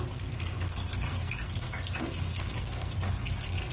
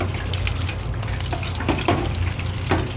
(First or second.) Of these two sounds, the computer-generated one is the first